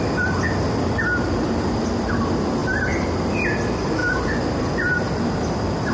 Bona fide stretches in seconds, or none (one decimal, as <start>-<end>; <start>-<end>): 0.0-2.6; 3.2-4.0; 4.6-5.9